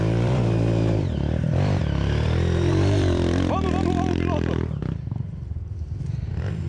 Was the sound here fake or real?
fake